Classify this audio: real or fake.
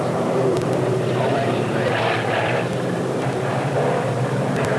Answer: fake